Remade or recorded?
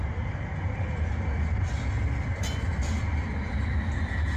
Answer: recorded